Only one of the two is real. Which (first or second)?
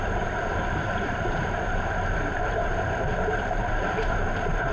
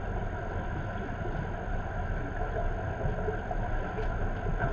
second